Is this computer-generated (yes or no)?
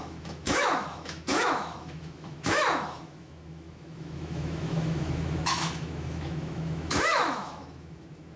yes